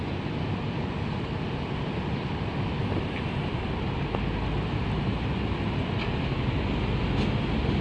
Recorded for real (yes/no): yes